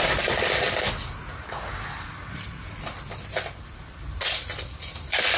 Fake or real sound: real